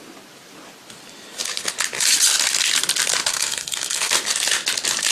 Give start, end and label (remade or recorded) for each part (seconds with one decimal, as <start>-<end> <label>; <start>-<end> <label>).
0.0-3.3 recorded; 3.3-4.1 remade; 4.1-5.1 recorded